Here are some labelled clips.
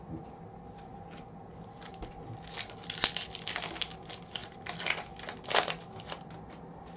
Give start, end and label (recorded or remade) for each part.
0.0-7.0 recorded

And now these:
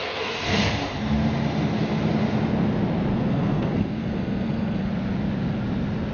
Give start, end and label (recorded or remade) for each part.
0.0-0.8 remade; 0.8-3.1 recorded; 3.1-4.9 remade; 4.9-6.1 recorded

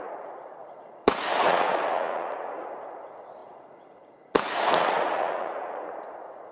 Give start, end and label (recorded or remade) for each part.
0.0-6.5 remade